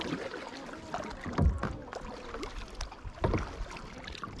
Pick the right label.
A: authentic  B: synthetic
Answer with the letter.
A